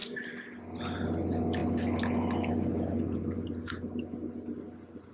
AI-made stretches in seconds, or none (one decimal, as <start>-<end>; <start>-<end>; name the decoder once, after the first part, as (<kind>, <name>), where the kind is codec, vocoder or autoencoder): none